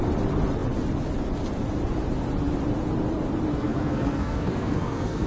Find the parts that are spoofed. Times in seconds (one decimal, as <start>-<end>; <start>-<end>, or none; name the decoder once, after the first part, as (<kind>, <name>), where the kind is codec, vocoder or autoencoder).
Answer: 3.5-5.3 (codec, SNAC)